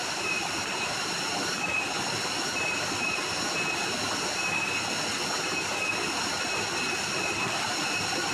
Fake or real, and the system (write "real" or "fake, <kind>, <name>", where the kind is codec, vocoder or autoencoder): real